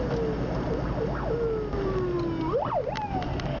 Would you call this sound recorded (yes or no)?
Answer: yes